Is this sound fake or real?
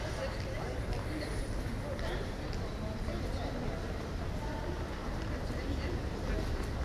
real